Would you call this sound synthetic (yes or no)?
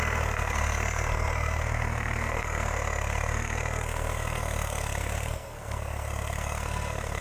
yes